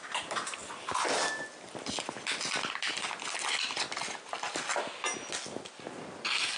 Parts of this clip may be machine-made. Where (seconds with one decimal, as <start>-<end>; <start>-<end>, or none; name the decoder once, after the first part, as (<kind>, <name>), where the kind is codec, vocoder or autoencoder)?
none

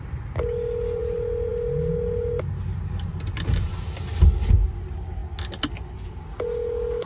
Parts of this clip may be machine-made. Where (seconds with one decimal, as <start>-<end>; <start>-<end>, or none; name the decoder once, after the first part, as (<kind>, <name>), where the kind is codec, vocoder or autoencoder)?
none